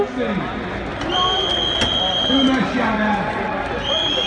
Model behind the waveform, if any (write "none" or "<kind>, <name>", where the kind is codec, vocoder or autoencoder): none